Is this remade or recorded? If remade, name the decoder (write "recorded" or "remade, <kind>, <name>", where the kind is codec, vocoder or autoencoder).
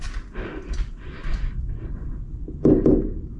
remade, vocoder, BigVGAN v2